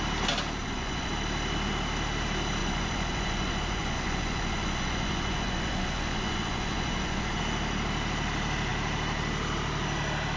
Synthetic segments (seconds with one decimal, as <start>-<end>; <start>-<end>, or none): 0.6-1.1; 2.6-7.4

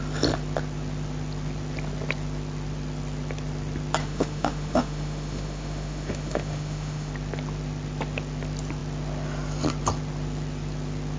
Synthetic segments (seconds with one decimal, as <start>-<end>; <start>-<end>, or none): 4.0-7.1